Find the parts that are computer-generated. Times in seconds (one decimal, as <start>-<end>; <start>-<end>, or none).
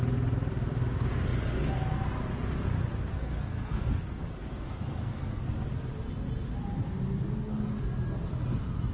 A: 3.1-5.5